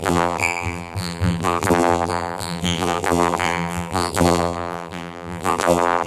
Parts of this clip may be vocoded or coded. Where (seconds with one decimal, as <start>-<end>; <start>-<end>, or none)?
0.0-6.1